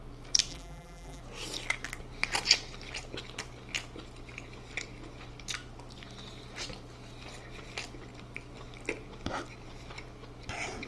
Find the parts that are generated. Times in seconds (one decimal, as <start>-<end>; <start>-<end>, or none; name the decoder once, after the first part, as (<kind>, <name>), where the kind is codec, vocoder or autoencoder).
0.5-1.2 (vocoder, BigVGAN v2)